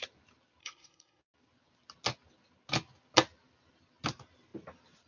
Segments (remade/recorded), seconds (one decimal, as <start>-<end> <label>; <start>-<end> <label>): 0.0-0.6 recorded; 0.6-1.2 remade; 1.2-5.1 recorded